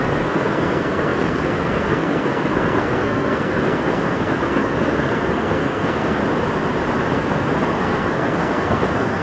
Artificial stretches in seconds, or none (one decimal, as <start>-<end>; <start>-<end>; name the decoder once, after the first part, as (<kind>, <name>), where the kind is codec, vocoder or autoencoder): 0.0-6.2 (codec, SNAC); 7.1-9.2